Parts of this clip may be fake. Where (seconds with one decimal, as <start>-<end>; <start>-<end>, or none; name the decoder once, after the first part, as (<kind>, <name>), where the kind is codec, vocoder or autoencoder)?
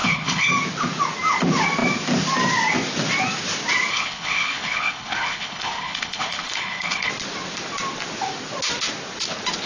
0.0-0.5 (codec, HILCodec); 3.9-7.1